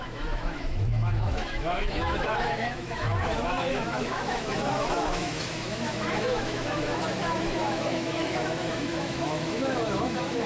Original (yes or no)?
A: no